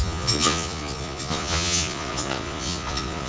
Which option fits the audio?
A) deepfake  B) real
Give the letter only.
A